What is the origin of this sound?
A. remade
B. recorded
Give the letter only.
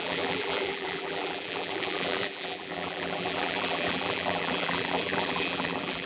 A